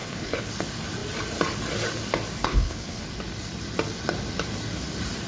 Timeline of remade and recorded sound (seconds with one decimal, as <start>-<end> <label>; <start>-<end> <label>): 0.0-0.5 remade; 0.5-2.4 recorded; 2.4-3.0 remade; 3.0-5.3 recorded